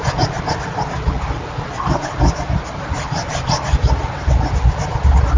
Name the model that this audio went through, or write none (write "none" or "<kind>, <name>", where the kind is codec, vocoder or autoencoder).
none